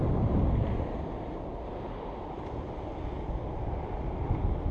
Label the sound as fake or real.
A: real